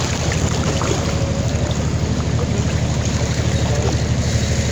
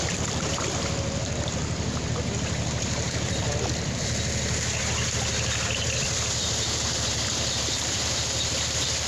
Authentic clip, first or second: first